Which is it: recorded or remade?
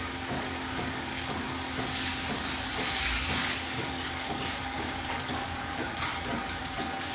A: remade